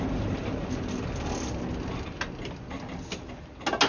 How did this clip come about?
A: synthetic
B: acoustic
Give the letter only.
B